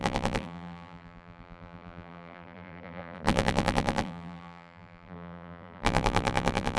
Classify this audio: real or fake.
fake